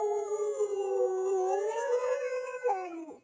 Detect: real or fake fake